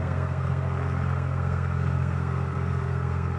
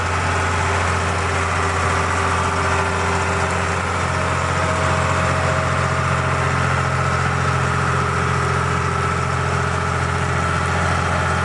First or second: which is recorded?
second